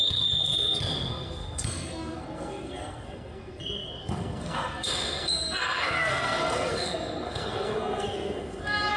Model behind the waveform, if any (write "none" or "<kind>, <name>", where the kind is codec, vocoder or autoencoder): codec, SNAC